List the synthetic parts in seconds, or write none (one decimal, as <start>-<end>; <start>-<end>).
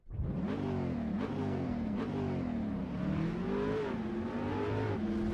1.4-2.0